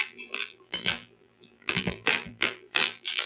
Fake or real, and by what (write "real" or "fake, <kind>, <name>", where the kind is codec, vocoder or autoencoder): fake, vocoder, BigVGAN v2